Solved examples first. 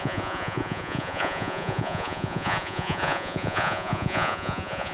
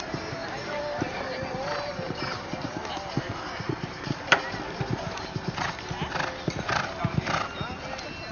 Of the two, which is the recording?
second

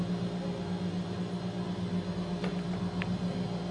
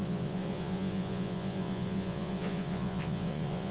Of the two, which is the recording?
first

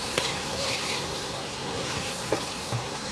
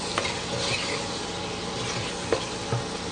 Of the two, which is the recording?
second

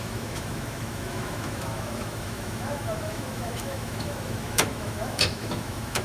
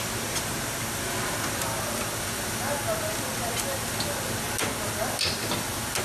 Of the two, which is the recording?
second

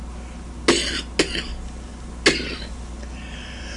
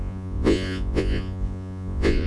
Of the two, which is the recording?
first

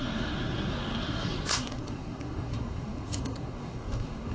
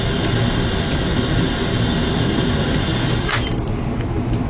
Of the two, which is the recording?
second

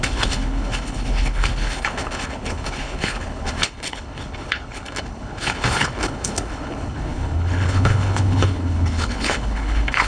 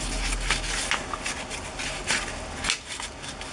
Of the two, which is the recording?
second